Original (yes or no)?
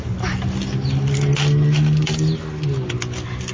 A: yes